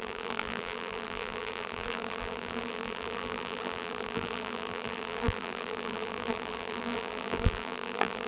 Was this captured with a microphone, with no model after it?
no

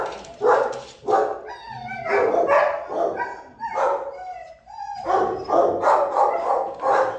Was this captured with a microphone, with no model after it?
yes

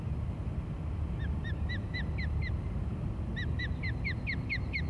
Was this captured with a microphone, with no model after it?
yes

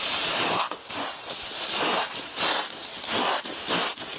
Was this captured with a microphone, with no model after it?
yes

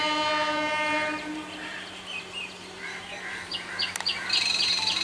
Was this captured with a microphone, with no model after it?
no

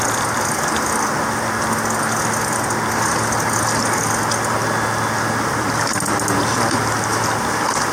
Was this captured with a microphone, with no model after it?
yes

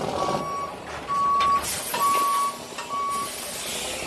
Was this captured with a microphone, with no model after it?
yes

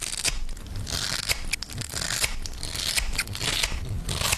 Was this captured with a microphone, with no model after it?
yes